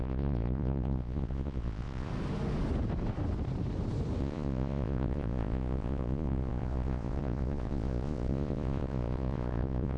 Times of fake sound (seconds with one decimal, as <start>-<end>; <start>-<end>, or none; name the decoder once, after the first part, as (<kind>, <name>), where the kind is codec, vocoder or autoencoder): 0.0-2.1 (vocoder, Vocos); 4.2-10.0